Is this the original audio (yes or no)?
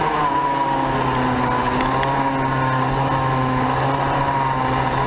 yes